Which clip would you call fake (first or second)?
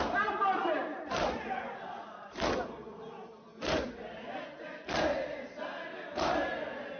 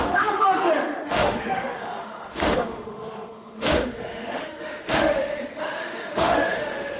second